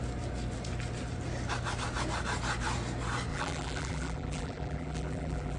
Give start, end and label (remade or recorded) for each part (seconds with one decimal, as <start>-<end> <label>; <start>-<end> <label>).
0.0-3.3 recorded; 3.3-5.6 remade